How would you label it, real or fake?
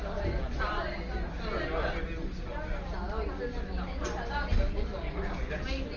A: real